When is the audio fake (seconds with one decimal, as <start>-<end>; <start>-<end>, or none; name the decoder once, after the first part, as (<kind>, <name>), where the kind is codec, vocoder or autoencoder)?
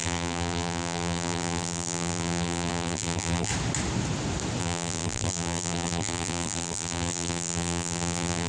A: 0.0-3.5 (vocoder, BigVGAN v2); 4.6-8.5